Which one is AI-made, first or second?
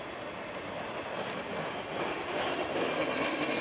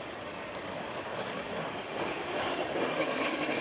second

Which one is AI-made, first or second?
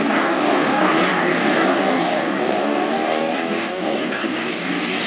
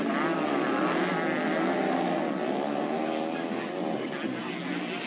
first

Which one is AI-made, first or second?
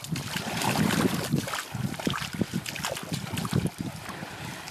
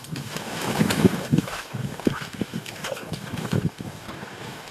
second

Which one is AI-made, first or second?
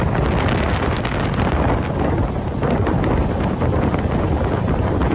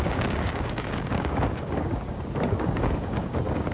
second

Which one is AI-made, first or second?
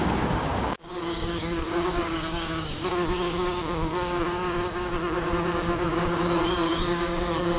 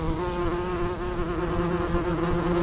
first